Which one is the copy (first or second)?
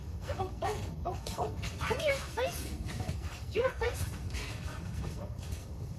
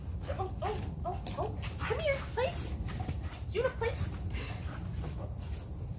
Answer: first